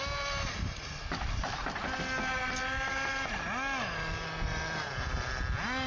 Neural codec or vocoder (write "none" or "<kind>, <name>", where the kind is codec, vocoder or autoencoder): none